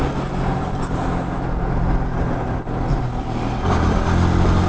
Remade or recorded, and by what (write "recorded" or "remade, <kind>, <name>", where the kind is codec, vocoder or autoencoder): recorded